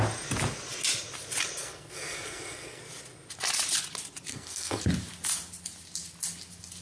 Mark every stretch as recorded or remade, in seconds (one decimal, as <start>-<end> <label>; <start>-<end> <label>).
0.0-1.6 recorded; 1.6-2.8 remade; 2.8-4.3 recorded; 4.3-4.8 remade; 4.8-6.8 recorded